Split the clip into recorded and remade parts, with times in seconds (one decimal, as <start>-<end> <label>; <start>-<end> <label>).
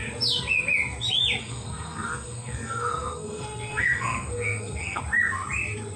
0.0-1.4 recorded; 1.4-5.0 remade; 5.0-6.0 recorded